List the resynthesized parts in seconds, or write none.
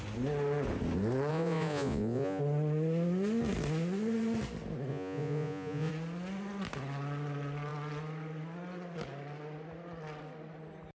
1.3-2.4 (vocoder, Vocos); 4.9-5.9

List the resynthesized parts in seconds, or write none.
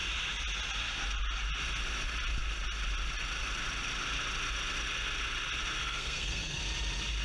5.8-6.6 (codec, SNAC)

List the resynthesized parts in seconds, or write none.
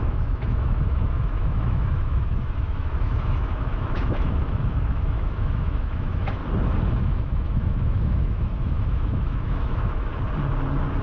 0.0-6.4 (autoencoder, DAC-VAE); 7.0-10.1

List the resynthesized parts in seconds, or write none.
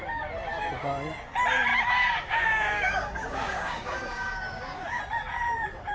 1.7-5.0 (codec, DAC)